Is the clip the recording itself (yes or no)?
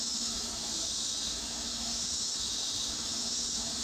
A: no